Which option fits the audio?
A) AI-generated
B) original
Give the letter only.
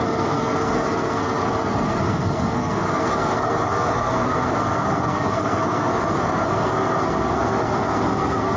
A